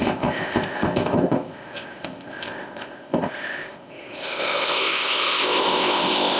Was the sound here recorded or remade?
remade